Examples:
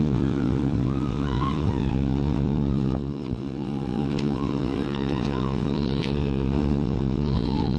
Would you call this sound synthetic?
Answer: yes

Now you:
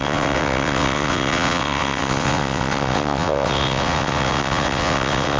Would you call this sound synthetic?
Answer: yes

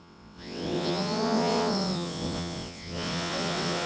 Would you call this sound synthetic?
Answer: yes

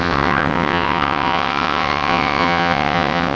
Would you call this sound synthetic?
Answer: yes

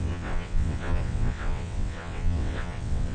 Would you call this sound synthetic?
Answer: yes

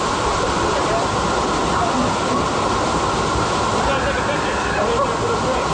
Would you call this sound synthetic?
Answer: no